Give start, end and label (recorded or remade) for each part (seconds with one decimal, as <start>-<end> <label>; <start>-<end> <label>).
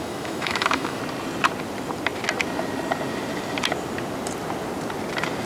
0.0-1.0 remade; 1.0-5.5 recorded